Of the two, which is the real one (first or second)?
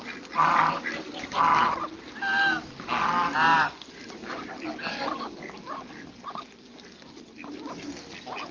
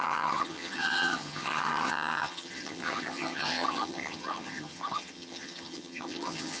first